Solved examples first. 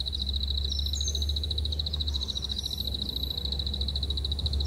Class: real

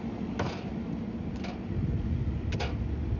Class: real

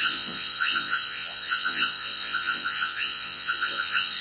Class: fake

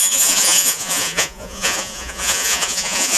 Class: fake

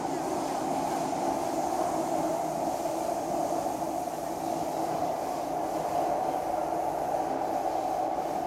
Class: real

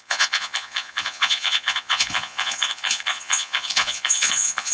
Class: fake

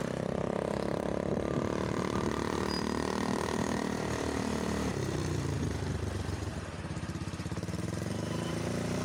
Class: fake